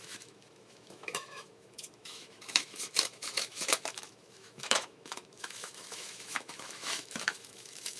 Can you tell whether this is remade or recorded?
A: remade